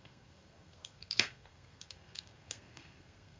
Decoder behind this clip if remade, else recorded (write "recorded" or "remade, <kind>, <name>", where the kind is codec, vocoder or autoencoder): remade, codec, SNAC